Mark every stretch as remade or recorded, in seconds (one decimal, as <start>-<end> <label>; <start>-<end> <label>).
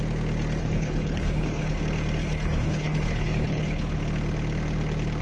0.0-0.6 recorded; 0.6-1.8 remade; 1.8-2.2 recorded; 2.2-4.0 remade; 4.0-5.2 recorded